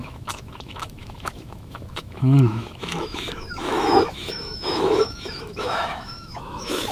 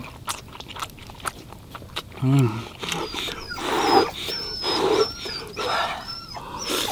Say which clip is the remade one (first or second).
first